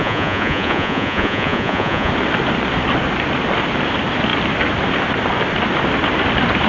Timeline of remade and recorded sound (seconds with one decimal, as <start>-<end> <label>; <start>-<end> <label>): 0.0-2.1 remade; 2.1-6.7 recorded